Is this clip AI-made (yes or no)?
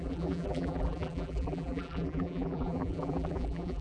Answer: yes